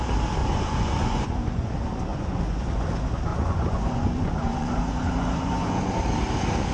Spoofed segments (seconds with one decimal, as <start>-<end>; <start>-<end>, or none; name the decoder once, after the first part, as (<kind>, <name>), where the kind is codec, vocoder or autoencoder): 0.4-1.7 (vocoder, Vocos); 2.1-2.9; 3.3-5.9